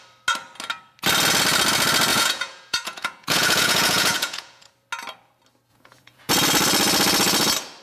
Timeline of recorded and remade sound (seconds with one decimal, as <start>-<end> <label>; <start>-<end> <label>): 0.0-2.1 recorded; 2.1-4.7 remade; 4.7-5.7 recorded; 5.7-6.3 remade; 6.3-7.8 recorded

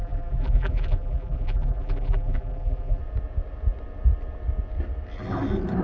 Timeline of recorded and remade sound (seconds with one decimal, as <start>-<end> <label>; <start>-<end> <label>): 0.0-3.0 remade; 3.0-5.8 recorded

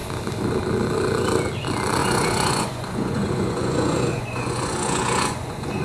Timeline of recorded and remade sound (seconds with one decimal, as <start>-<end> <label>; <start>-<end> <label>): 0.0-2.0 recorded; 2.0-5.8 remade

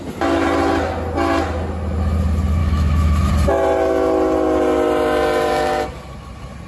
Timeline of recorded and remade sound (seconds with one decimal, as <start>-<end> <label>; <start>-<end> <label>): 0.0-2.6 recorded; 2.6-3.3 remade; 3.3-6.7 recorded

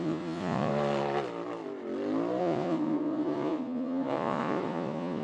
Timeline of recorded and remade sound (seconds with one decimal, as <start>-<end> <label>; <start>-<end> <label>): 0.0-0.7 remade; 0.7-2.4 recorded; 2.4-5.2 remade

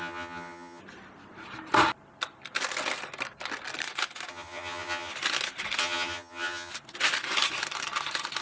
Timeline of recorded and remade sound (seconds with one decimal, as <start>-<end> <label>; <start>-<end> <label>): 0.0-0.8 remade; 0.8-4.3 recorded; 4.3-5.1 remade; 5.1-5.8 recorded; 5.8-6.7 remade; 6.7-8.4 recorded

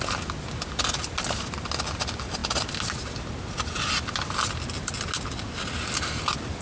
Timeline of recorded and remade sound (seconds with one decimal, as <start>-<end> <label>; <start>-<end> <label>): 0.0-6.6 recorded

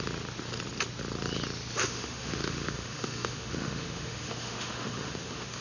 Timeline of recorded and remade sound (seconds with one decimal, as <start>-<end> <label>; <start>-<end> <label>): 0.0-1.8 recorded; 1.8-5.6 remade